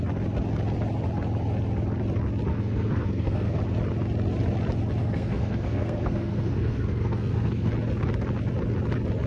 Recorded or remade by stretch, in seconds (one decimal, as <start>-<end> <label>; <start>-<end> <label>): 0.0-2.5 recorded; 2.5-3.6 remade; 3.6-5.0 recorded; 5.0-7.7 remade; 7.7-9.3 recorded